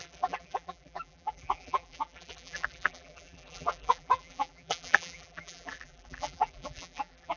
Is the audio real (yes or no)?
no